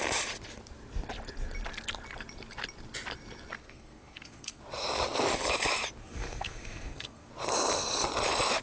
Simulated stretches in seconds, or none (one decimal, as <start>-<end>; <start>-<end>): 3.6-4.6; 6.0-7.3